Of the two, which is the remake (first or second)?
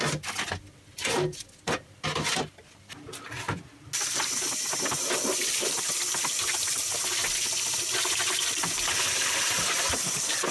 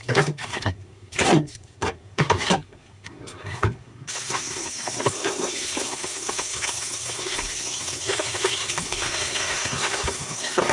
second